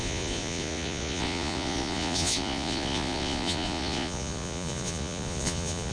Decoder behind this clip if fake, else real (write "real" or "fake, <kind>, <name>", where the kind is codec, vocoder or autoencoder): fake, vocoder, Vocos